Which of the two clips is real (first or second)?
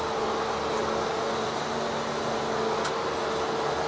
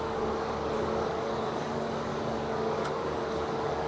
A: first